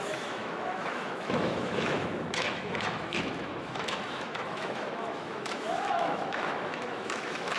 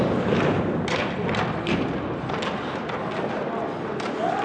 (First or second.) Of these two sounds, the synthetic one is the first